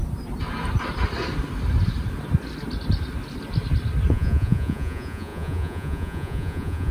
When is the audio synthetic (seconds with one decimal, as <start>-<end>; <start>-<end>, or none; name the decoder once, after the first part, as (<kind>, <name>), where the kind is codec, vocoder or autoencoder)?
4.1-6.9 (vocoder, Vocos)